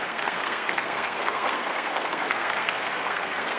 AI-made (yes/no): yes